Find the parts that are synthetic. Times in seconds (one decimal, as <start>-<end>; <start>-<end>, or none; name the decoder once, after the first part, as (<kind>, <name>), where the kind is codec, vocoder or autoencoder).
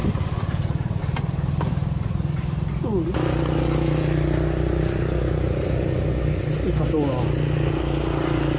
none